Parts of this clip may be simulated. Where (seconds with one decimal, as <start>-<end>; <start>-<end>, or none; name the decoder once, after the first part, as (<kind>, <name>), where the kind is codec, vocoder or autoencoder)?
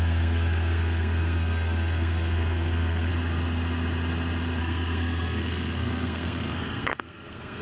0.0-3.1 (codec, SNAC); 4.6-7.6